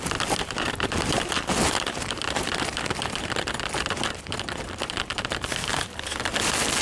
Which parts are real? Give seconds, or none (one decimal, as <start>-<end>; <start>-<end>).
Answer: 5.6-6.8